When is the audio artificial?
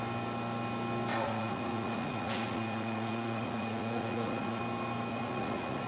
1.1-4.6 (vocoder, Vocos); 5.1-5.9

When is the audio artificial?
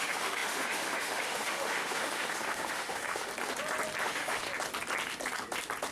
0.0-3.3 (autoencoder, DAC-VAE); 4.0-4.5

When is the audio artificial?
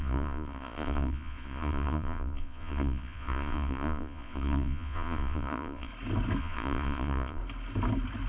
0.0-5.9 (vocoder, Vocos); 6.4-7.4